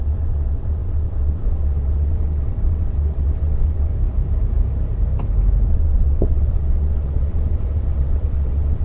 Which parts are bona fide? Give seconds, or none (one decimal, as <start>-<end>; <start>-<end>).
3.9-5.7